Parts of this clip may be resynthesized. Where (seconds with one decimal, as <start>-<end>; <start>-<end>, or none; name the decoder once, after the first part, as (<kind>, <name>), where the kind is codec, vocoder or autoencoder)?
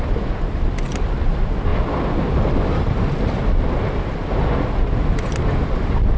0.0-1.7 (vocoder, BigVGAN v2); 4.1-6.2